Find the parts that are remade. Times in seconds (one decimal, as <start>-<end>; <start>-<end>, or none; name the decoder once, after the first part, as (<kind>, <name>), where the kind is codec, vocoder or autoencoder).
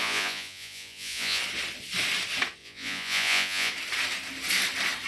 0.0-1.4 (vocoder, Vocos); 2.6-3.7